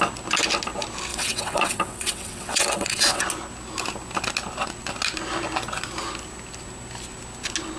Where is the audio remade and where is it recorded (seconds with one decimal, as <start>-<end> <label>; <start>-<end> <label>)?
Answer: 0.0-1.1 recorded; 1.1-3.2 remade; 3.2-7.8 recorded